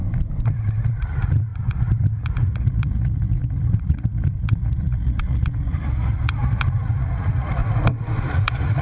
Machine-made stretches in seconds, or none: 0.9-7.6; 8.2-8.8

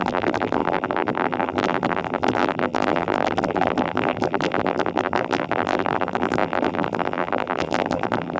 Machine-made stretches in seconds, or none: 0.0-8.4

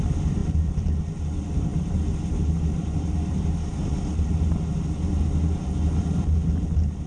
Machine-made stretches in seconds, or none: none

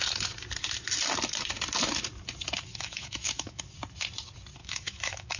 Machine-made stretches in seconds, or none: 2.7-3.6; 4.6-5.4

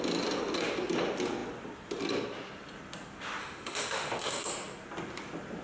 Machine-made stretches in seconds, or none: 3.4-4.5

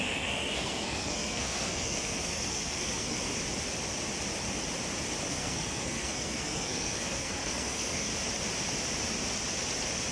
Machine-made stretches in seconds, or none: 0.0-3.3; 5.3-8.1

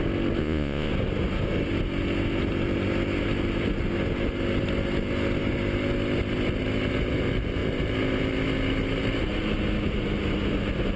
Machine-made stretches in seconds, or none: 0.4-0.9

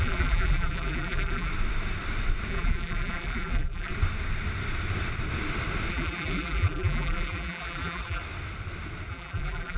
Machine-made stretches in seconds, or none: 0.0-1.5; 2.5-3.9; 5.9-8.2; 9.1-9.8